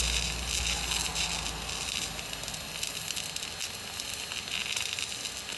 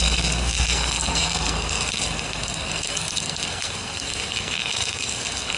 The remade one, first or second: second